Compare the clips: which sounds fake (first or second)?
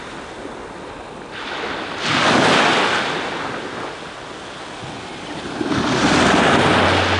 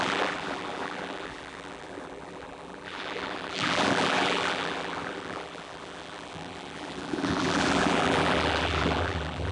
second